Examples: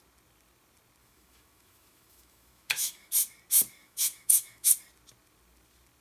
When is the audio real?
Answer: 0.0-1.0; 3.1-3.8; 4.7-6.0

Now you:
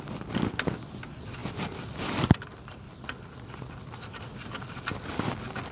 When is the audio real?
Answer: 0.0-5.7

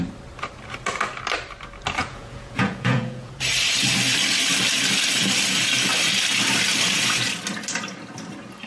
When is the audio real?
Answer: 0.0-2.0; 3.3-8.7

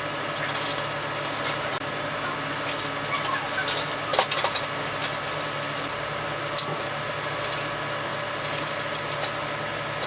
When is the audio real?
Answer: 0.0-6.7; 7.4-8.1; 8.9-10.1